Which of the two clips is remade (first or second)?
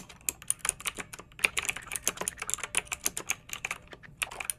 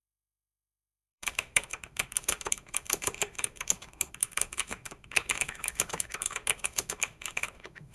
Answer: second